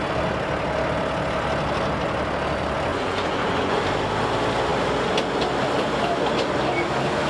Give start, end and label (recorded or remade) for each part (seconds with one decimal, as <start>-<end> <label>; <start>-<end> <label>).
0.0-2.9 recorded; 2.9-3.8 remade; 3.8-7.3 recorded